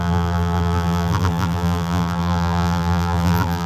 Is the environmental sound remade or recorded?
remade